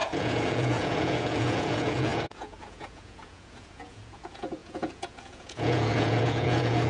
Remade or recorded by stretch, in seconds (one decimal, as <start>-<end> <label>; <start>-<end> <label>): 0.0-6.9 remade